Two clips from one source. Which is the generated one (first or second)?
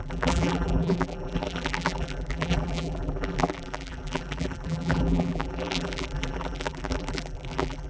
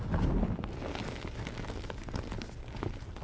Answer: first